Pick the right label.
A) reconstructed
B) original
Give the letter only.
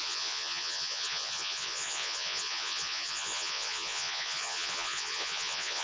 A